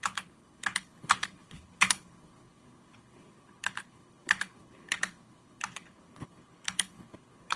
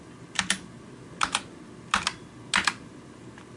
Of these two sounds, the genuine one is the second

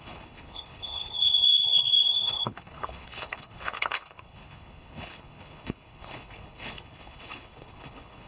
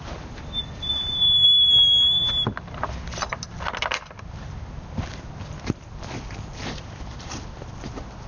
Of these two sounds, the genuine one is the second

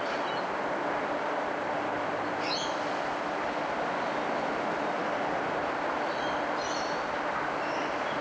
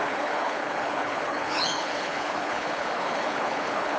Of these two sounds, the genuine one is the first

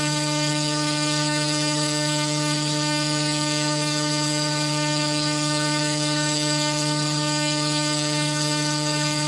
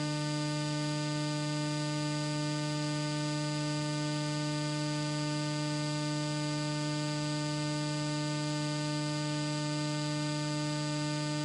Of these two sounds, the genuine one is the second